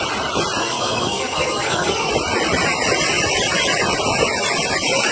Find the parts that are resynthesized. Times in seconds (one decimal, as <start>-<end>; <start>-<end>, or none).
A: 0.6-2.1